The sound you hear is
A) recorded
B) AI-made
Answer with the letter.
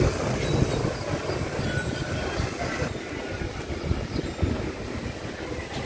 A